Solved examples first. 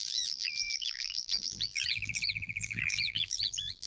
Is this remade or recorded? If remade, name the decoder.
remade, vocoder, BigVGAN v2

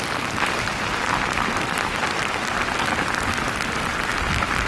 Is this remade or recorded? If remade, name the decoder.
recorded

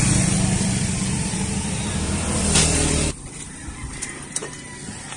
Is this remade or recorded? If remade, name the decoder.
remade, vocoder, BigVGAN v2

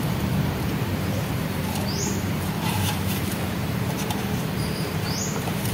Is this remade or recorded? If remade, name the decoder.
remade, vocoder, BigVGAN v2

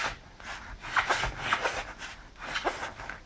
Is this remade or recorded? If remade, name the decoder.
recorded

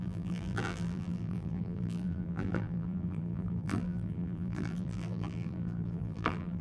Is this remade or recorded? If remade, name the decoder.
remade, vocoder, BigVGAN v2